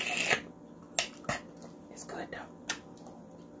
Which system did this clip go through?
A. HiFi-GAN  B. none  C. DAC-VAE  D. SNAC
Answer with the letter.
B